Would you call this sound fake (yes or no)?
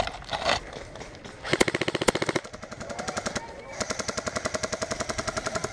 no